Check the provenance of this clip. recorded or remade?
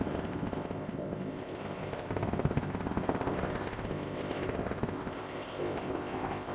remade